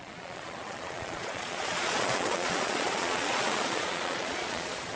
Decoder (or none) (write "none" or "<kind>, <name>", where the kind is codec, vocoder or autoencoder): vocoder, Vocos